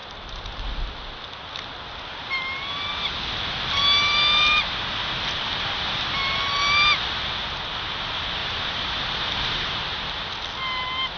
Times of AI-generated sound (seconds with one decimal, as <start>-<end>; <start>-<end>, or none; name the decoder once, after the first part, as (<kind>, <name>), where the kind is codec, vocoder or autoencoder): 8.4-9.8 (vocoder, BigVGAN v2)